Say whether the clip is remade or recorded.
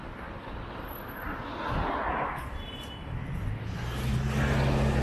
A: recorded